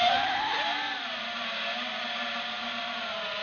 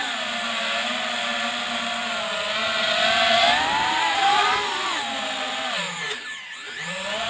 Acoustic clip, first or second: second